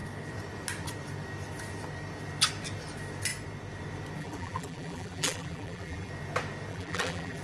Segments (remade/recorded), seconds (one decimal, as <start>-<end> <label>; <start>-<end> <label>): 0.0-4.2 recorded; 4.2-6.1 remade; 6.1-6.7 recorded; 6.7-7.4 remade